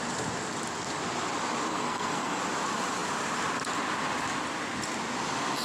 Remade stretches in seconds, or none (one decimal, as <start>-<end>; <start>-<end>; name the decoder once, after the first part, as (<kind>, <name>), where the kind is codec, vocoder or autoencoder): 1.7-2.4 (codec, SNAC)